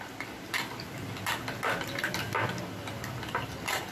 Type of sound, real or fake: real